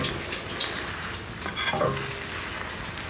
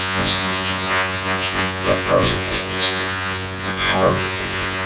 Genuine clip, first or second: first